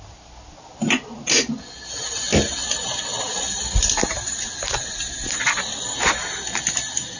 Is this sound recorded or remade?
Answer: recorded